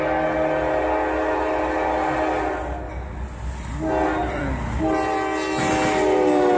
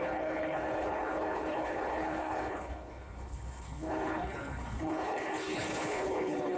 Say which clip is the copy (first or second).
second